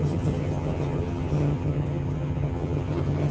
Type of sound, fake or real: fake